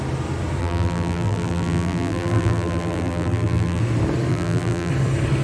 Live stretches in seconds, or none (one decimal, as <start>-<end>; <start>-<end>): 0.0-0.6; 3.8-4.3; 4.9-5.4